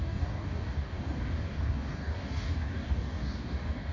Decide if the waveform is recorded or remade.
remade